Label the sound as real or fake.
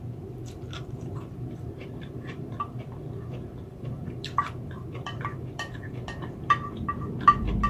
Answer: fake